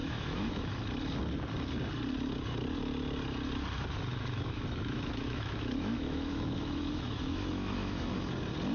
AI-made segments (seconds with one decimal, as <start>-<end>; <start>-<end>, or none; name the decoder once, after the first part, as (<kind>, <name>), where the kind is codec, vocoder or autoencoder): 0.0-0.7 (autoencoder, DAC-VAE); 4.1-8.1